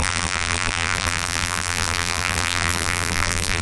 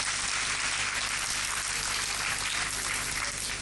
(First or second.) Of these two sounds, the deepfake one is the first